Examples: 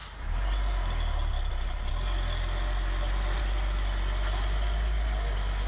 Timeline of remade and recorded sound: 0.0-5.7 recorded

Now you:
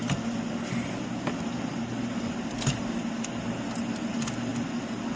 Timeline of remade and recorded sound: 0.0-5.2 recorded

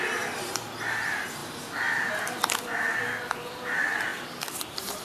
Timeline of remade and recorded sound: 0.0-5.0 recorded

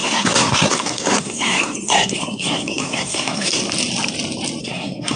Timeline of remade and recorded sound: 0.0-3.6 remade; 3.6-4.6 recorded; 4.6-5.2 remade

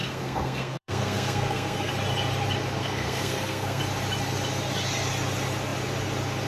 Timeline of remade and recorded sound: 0.0-1.9 remade; 1.9-2.8 recorded; 2.8-3.8 remade; 3.8-6.5 recorded